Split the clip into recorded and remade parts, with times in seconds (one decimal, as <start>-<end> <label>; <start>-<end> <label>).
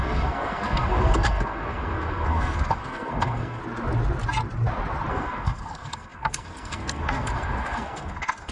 0.0-3.6 remade; 3.6-5.1 recorded; 5.1-8.5 remade